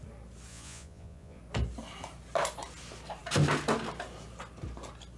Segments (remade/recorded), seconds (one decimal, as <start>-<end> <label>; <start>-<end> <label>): 0.0-0.5 recorded; 0.5-1.4 remade; 1.4-5.2 recorded